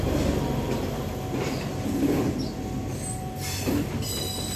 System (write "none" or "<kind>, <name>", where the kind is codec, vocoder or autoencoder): none